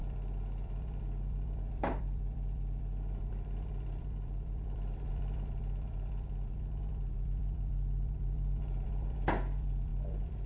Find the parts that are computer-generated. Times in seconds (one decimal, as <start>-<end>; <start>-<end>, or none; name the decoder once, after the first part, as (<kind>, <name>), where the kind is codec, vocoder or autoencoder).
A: 0.0-10.5 (vocoder, BigVGAN v2)